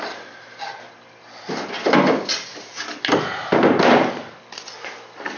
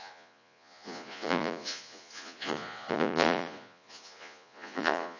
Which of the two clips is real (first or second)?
first